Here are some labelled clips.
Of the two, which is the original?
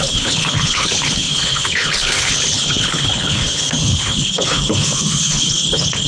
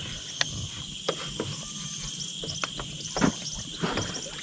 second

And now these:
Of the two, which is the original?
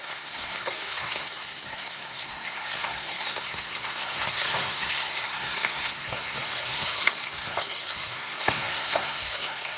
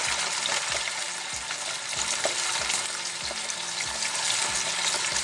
second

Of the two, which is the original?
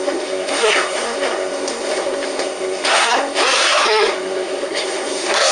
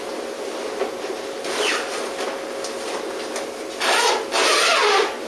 second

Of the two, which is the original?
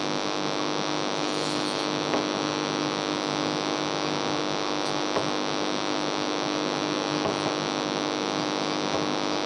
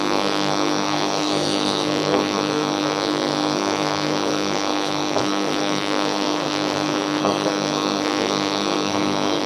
first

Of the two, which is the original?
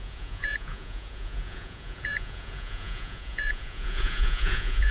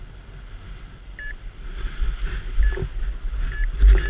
second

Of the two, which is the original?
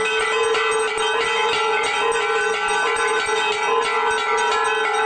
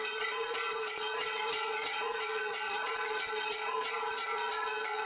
first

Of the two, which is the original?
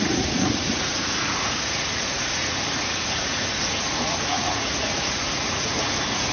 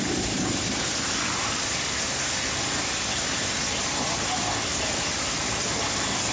second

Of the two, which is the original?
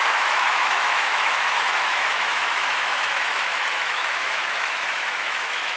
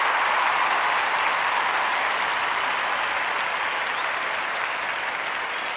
second